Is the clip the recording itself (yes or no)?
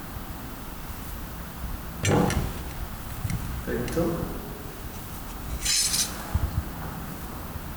yes